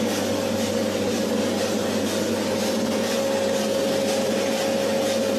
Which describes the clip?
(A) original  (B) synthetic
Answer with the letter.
A